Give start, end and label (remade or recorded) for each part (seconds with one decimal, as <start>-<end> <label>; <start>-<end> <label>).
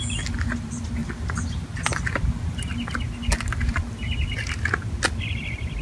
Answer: 0.0-5.8 recorded